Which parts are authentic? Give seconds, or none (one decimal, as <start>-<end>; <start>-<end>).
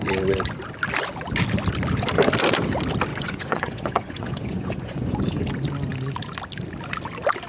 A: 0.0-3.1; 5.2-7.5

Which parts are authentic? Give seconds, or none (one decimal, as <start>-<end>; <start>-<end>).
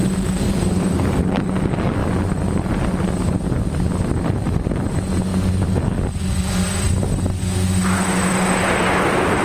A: 0.0-9.4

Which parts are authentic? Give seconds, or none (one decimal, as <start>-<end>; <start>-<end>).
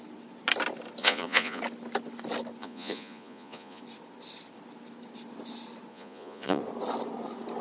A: 0.0-1.0; 1.6-2.6; 3.8-5.9; 6.6-7.6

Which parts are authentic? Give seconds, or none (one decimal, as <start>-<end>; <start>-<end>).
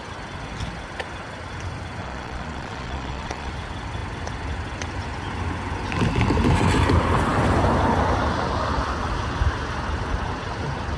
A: 0.0-2.0; 3.5-11.0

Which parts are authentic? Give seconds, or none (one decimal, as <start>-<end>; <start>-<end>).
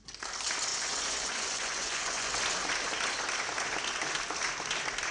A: 0.0-0.7; 2.3-5.1